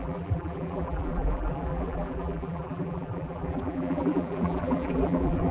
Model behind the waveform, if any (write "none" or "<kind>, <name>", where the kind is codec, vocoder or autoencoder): vocoder, BigVGAN v2